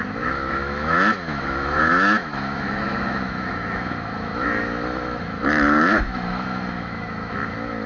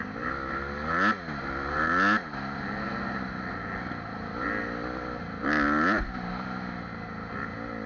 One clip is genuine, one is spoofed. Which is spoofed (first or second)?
first